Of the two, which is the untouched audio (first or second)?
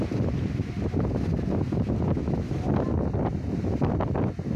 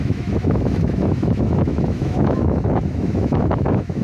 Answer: first